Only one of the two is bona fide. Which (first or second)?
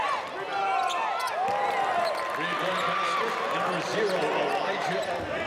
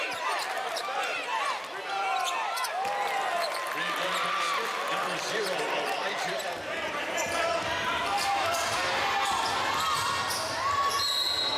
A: first